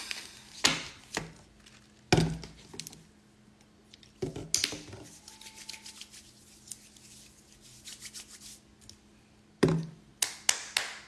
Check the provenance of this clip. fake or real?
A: real